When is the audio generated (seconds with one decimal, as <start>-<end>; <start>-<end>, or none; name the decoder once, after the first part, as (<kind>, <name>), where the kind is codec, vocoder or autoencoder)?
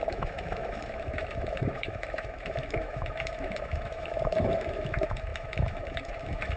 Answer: 0.0-6.6 (autoencoder, DAC-VAE)